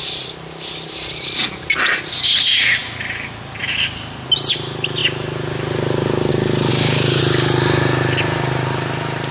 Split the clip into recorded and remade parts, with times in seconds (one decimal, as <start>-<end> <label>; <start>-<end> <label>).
0.0-6.7 recorded; 6.7-7.2 remade; 7.2-9.3 recorded